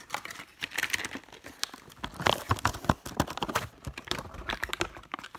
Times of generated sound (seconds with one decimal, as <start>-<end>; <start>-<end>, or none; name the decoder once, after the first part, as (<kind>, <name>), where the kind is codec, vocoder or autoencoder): 0.0-0.5 (vocoder, BigVGAN v2); 3.7-5.4